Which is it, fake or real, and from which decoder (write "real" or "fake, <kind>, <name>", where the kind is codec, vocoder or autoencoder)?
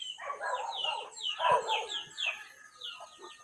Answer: real